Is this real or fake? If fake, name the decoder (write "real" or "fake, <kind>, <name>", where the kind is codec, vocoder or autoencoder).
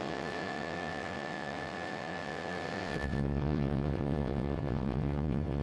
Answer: fake, vocoder, WaveNeXt